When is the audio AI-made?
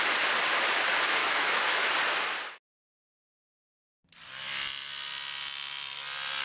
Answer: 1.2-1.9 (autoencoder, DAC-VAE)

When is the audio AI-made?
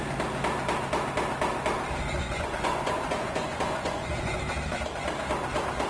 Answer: 2.2-4.4 (vocoder, Vocos)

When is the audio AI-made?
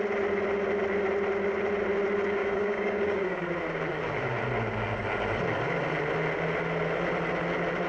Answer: 2.4-3.5 (codec, DAC)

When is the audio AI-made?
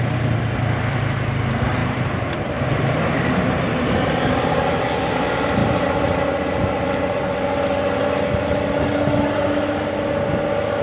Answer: 1.8-4.8 (vocoder, BigVGAN v2); 5.6-6.2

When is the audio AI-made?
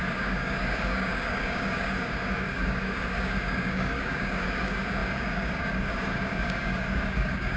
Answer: 0.0-7.6 (codec, DAC)